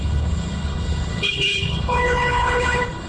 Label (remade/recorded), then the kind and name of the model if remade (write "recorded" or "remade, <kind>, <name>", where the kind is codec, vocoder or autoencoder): remade, codec, HILCodec